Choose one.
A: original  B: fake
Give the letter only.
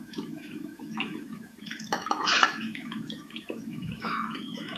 B